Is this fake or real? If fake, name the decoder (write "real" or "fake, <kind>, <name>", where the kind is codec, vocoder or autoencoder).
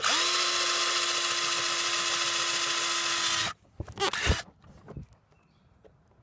real